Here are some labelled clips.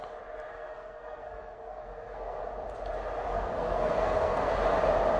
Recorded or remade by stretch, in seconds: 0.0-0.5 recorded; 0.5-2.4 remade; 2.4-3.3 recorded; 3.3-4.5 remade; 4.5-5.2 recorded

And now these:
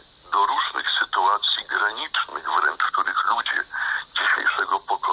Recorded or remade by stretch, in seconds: 0.0-5.1 recorded

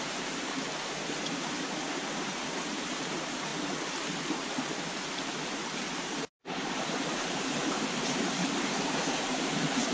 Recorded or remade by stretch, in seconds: 0.0-3.5 remade; 3.5-5.3 recorded; 5.3-9.9 remade

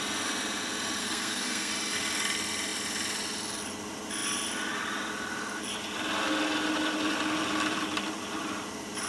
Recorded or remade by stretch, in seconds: 0.0-1.0 recorded; 1.0-1.7 remade; 1.7-9.1 recorded

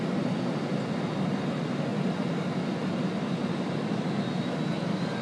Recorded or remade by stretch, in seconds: 0.0-5.2 recorded